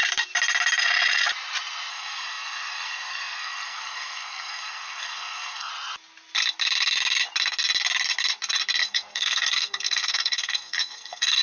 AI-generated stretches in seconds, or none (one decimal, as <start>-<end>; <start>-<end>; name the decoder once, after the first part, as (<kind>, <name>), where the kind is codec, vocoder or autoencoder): 1.9-5.7 (codec, SNAC); 8.8-11.4